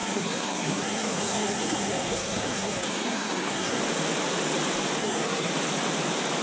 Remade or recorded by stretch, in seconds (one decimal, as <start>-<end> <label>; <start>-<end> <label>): 0.0-3.8 remade; 3.8-5.0 recorded; 5.0-5.5 remade; 5.5-6.4 recorded